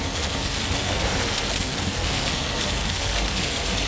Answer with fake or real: fake